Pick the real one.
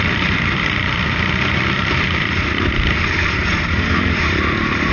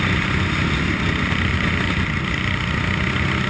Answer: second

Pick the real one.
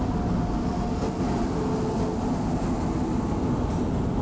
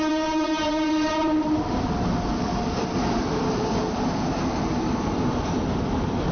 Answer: first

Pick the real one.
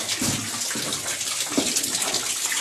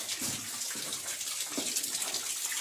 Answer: first